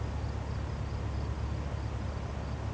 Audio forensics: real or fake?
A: real